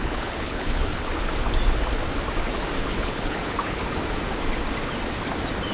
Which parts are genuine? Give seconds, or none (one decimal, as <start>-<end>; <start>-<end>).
1.1-2.9; 3.8-5.7